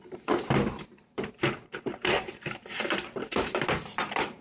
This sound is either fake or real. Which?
fake